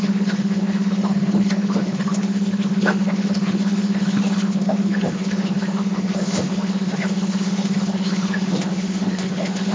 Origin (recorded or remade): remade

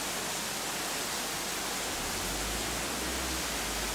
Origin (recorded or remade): recorded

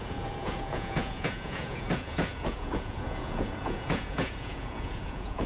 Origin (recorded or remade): remade